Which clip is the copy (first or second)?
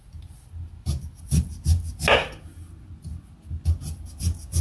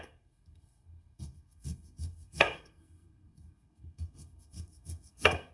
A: second